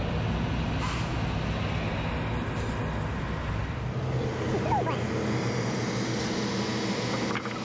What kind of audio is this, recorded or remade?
recorded